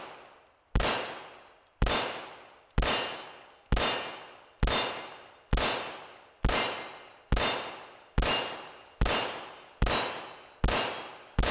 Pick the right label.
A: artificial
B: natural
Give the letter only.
B